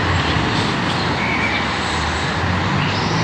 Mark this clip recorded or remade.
recorded